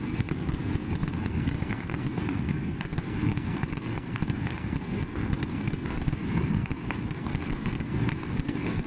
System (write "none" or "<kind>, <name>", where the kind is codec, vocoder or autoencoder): codec, SNAC